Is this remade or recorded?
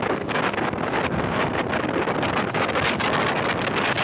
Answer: recorded